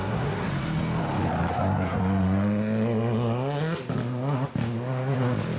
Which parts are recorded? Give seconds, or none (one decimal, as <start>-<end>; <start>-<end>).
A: 0.5-1.5; 2.0-5.6